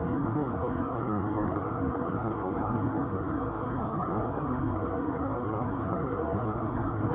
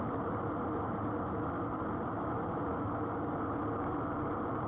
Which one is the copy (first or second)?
first